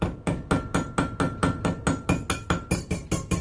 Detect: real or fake real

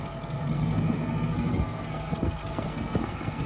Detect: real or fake fake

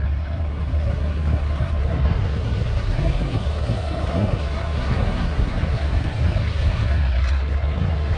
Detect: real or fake fake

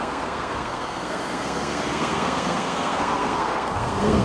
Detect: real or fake fake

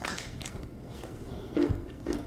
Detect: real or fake fake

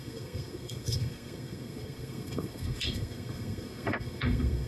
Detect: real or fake fake